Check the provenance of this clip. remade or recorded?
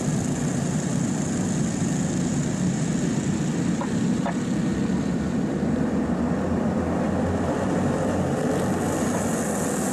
remade